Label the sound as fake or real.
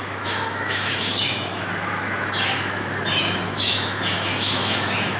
fake